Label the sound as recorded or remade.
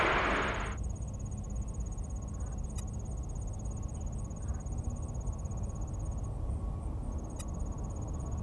recorded